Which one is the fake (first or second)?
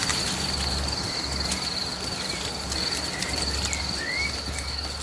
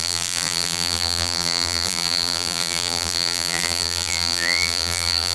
second